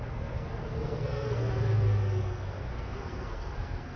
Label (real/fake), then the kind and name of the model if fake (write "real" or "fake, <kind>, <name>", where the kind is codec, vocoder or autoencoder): fake, codec, SNAC